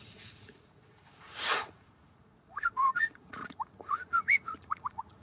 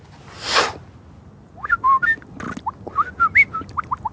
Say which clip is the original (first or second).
second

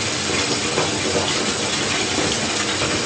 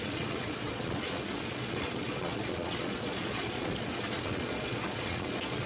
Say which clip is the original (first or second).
first